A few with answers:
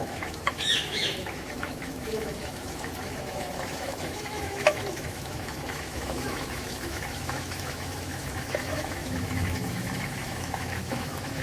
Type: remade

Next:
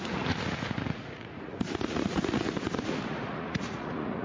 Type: remade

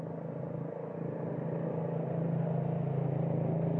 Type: recorded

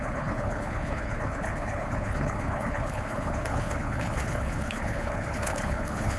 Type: remade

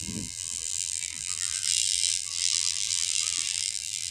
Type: remade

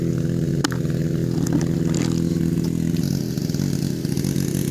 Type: recorded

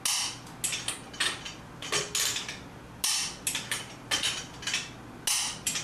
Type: recorded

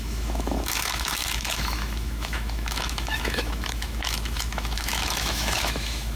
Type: remade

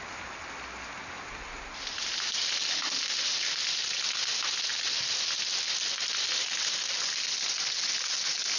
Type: recorded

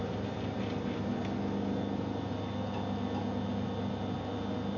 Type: recorded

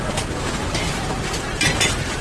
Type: recorded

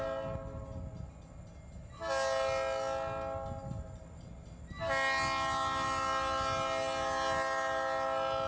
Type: recorded